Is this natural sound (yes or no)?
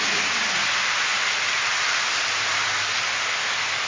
yes